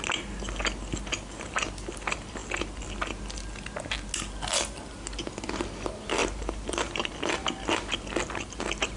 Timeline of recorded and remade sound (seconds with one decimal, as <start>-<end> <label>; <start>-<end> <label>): 0.0-6.2 recorded; 6.2-7.1 remade; 7.1-9.0 recorded

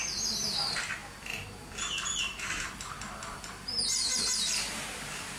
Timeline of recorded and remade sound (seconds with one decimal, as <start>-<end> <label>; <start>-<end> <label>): 0.0-5.4 remade

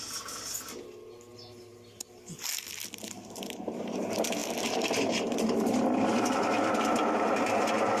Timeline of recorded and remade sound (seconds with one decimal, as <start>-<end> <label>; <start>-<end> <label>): 0.0-8.0 recorded

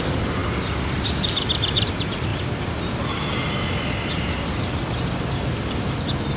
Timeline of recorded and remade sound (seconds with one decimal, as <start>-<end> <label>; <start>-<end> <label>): 0.0-0.4 remade; 0.4-1.2 recorded; 1.2-2.3 remade; 2.3-6.4 recorded